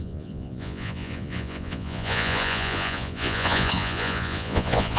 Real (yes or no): no